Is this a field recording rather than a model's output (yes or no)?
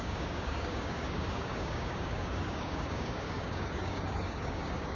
no